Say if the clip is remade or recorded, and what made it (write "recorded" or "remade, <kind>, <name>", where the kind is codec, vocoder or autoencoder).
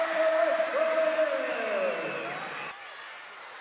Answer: recorded